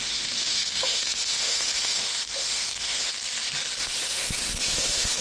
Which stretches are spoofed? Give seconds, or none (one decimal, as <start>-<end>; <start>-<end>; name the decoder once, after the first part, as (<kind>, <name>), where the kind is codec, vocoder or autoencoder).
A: 0.0-3.1 (autoencoder, DAC-VAE); 3.8-5.2